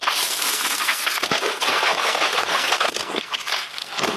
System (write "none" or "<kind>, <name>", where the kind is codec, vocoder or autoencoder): codec, SNAC